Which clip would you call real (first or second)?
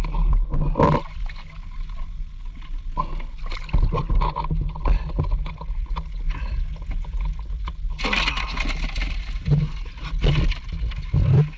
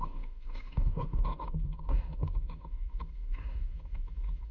first